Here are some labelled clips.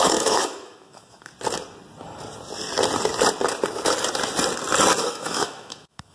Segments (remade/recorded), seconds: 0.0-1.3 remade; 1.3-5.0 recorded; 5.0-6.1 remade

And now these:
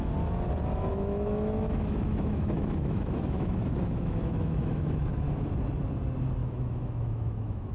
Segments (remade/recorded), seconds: 0.0-0.9 recorded; 0.9-5.5 remade; 5.5-6.4 recorded; 6.4-7.7 remade

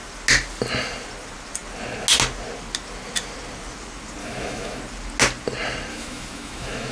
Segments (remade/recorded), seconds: 0.0-4.2 recorded; 4.2-4.8 remade; 4.8-5.9 recorded; 5.9-6.9 remade

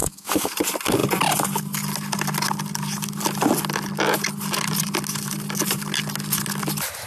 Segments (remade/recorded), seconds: 0.0-0.5 remade; 0.5-7.1 recorded

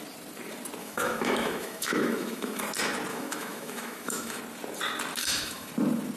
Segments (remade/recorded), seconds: 0.0-0.8 recorded; 0.8-2.6 remade; 2.6-3.1 recorded; 3.1-4.4 remade; 4.4-5.2 recorded; 5.2-5.7 remade; 5.7-6.2 recorded

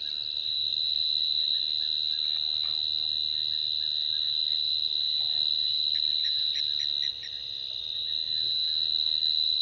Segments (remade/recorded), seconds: 0.0-9.6 recorded

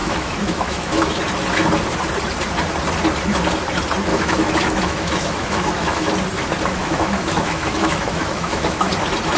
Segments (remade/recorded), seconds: 0.0-1.2 remade; 1.2-4.1 recorded; 4.1-6.1 remade; 6.1-6.8 recorded; 6.8-8.9 remade; 8.9-9.4 recorded